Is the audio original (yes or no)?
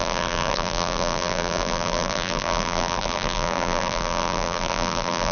no